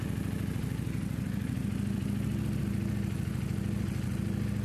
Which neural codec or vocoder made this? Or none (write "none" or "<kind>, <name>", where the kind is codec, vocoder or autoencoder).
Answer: none